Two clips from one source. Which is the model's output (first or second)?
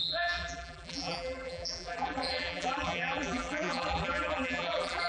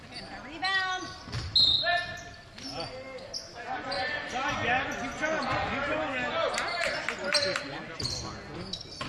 first